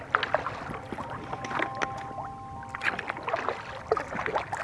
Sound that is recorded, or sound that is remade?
recorded